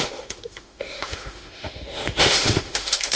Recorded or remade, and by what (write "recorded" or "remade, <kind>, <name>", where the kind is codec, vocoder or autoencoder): remade, autoencoder, DAC-VAE